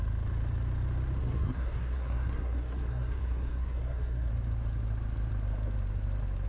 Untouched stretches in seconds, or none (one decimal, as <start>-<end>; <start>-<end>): 0.0-1.2; 4.3-6.5